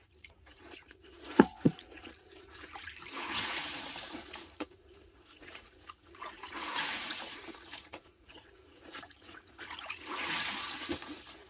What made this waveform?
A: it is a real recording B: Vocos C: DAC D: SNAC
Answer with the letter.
B